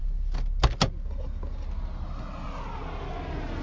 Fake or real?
real